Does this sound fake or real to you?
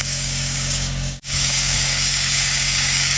fake